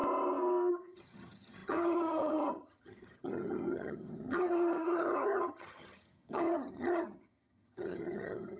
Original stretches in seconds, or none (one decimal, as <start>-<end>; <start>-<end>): 0.0-0.7

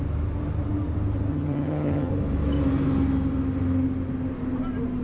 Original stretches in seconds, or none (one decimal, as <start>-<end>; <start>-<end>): 0.0-1.3; 2.1-5.0

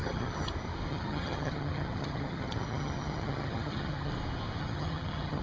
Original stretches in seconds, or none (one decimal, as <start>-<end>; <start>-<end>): 0.5-0.9; 4.1-4.6

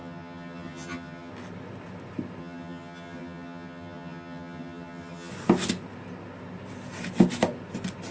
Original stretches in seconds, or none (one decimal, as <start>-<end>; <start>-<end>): 1.3-2.4; 5.3-8.1